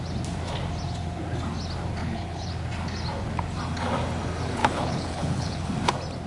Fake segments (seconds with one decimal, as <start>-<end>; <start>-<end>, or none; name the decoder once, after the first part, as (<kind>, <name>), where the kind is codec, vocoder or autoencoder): 2.0-2.5 (codec, HILCodec); 4.6-5.7